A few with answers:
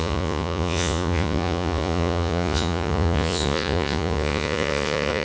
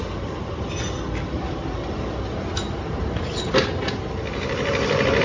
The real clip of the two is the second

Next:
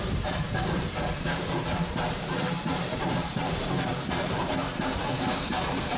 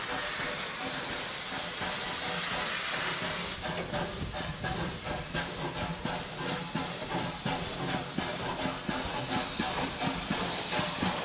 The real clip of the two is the second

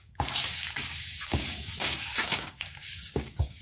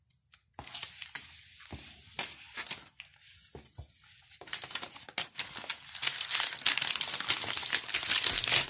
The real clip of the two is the second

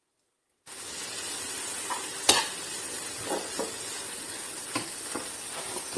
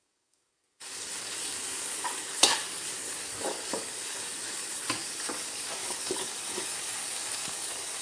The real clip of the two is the first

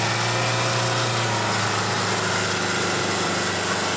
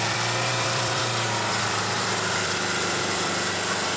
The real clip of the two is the first